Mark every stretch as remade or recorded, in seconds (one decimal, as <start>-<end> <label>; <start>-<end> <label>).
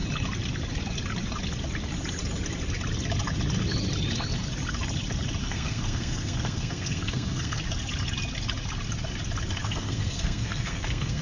0.0-5.4 recorded; 5.4-7.6 remade; 7.6-9.6 recorded; 9.6-11.2 remade